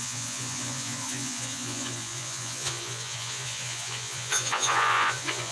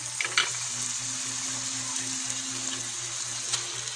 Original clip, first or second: second